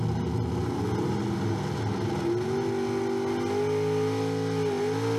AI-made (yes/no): no